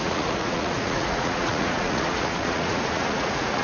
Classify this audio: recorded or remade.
remade